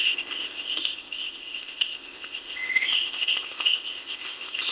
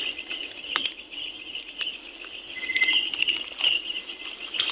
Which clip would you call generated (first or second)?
first